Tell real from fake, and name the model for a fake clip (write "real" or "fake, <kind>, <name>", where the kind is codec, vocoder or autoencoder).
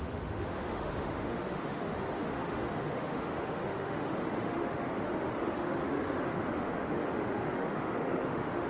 fake, autoencoder, DAC-VAE